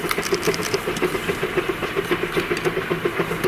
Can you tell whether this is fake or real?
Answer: real